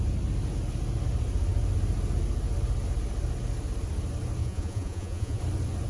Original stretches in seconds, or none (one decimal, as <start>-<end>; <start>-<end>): 0.0-4.4; 5.4-5.9